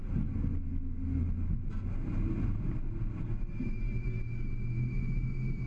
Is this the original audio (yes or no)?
yes